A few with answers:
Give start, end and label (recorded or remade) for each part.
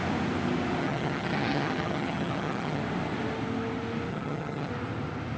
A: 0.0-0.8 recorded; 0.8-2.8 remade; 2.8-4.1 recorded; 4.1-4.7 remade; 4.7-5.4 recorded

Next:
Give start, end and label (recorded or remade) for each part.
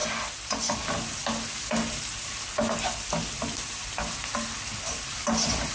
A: 0.0-5.7 recorded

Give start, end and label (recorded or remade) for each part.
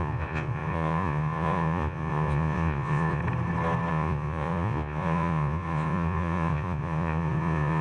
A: 0.0-3.2 remade; 3.2-3.9 recorded; 3.9-7.8 remade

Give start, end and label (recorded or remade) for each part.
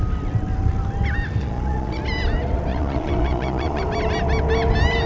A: 0.0-1.4 recorded; 1.4-2.0 remade; 2.0-2.7 recorded; 2.7-3.8 remade; 3.8-5.1 recorded